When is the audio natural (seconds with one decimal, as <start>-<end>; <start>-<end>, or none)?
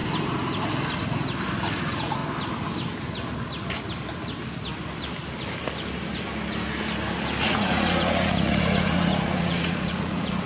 0.0-1.8; 2.2-7.4